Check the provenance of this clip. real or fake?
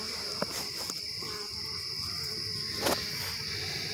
real